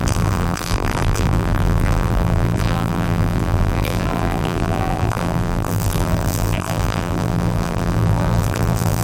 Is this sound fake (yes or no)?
yes